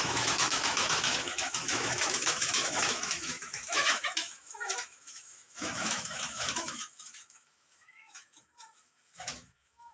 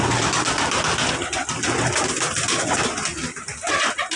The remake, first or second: first